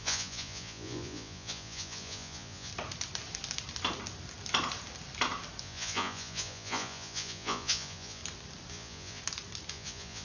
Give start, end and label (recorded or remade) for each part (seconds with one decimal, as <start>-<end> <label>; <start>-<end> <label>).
0.0-2.7 remade; 2.7-5.6 recorded; 5.6-8.2 remade; 8.2-8.7 recorded; 8.7-9.2 remade; 9.2-9.7 recorded; 9.7-10.2 remade